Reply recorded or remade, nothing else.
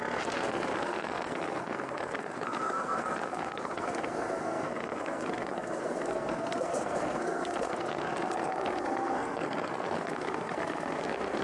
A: remade